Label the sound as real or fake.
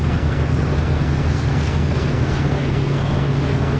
fake